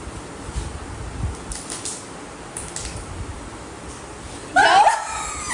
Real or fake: real